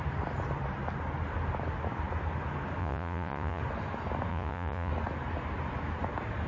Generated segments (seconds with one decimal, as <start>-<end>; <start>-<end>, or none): 2.8-3.6; 4.3-4.9